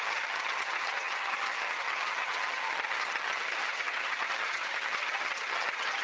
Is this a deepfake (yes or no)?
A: yes